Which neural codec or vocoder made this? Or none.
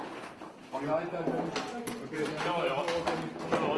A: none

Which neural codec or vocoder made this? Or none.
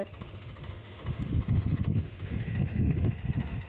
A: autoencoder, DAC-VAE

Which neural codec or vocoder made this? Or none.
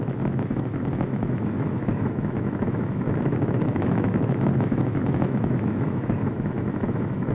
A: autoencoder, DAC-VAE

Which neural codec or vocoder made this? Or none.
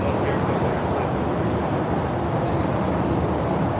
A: none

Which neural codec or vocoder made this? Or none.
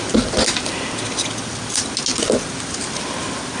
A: none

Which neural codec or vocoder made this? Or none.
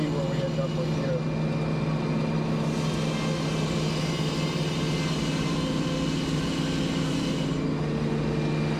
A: none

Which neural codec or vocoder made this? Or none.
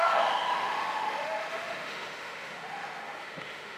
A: autoencoder, DAC-VAE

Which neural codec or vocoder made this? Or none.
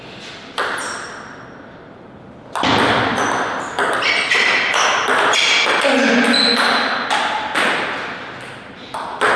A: none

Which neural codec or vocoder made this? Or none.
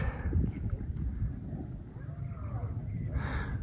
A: none